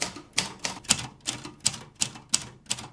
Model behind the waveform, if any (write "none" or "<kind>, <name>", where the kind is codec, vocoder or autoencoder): none